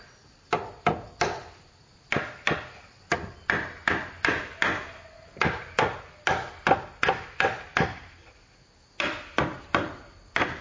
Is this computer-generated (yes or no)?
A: no